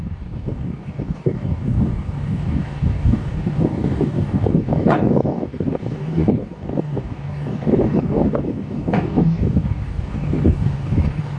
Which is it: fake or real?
fake